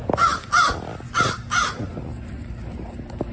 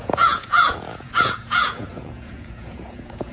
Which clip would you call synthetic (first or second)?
second